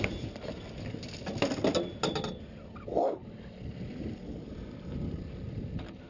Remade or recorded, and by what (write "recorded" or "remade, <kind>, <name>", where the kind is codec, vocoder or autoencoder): recorded